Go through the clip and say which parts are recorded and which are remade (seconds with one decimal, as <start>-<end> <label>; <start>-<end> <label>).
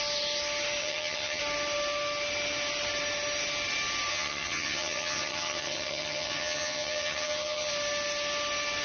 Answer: 0.0-0.8 recorded; 0.8-1.4 remade; 1.4-4.1 recorded; 4.1-7.7 remade; 7.7-8.8 recorded